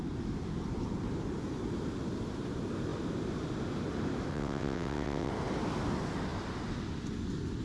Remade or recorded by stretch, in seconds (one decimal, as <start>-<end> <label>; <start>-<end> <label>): 0.0-4.3 recorded; 4.3-5.3 remade; 5.3-7.6 recorded